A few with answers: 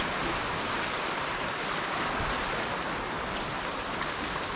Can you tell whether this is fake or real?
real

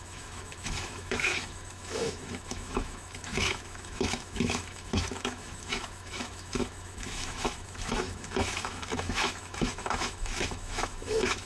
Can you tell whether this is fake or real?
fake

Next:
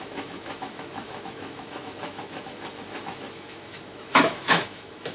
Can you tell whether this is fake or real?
fake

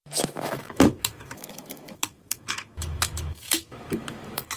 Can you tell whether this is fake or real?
fake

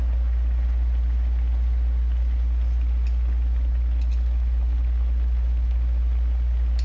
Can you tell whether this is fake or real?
real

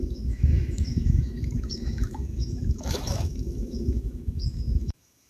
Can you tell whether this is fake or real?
fake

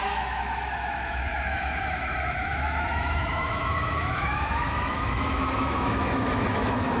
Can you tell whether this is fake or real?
fake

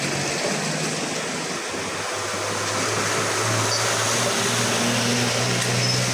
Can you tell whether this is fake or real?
real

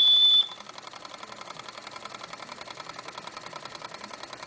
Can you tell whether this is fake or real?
real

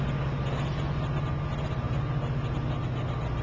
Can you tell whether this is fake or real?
real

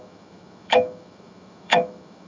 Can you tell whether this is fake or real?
fake